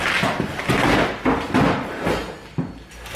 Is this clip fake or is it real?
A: real